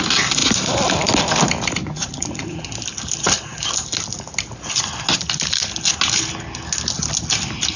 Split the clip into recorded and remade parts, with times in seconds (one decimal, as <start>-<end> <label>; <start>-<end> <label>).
0.0-1.8 recorded; 1.8-2.6 remade; 2.6-7.8 recorded